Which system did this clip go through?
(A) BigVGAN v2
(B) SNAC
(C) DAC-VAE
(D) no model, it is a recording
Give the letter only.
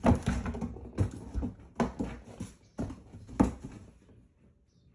D